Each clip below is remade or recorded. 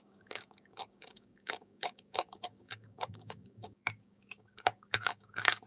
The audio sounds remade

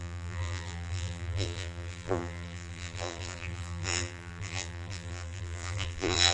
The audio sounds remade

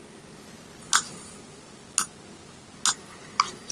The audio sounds recorded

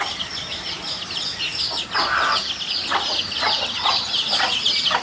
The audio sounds recorded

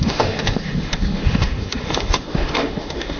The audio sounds remade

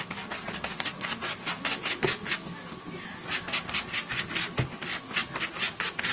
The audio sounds recorded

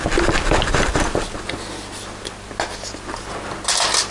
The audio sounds recorded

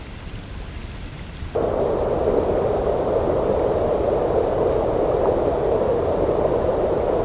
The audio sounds recorded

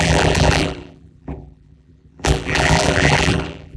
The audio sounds remade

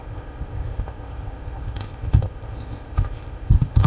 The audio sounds remade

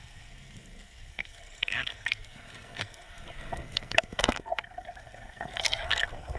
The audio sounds remade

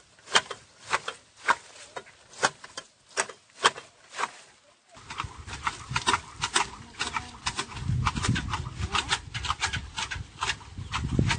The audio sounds recorded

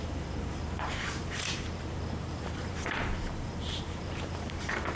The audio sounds remade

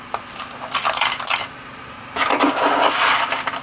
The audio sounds recorded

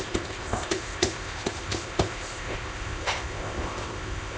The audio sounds remade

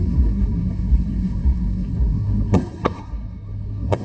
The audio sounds remade